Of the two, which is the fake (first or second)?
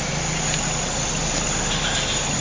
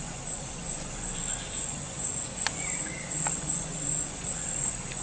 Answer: second